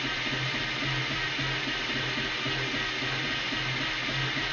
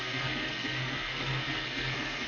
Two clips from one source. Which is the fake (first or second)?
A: second